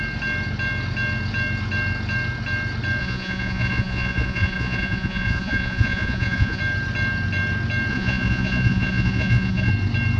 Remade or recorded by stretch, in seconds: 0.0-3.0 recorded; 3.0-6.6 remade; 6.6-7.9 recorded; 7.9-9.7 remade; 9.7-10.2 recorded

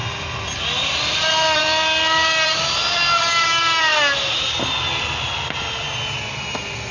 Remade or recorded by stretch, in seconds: 0.0-6.9 recorded

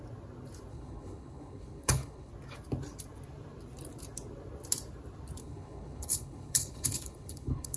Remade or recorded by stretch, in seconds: 0.0-0.7 recorded; 0.7-2.3 remade; 2.3-5.4 recorded; 5.4-7.8 remade